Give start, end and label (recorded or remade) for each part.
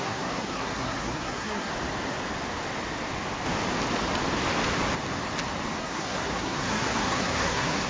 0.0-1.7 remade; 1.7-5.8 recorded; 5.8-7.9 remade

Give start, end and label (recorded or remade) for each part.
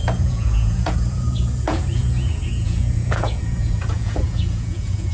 0.0-5.1 remade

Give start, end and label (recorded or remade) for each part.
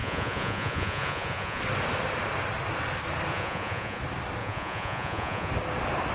0.0-1.6 remade; 1.6-3.3 recorded; 3.3-4.0 remade; 4.0-4.4 recorded; 4.4-5.5 remade; 5.5-6.1 recorded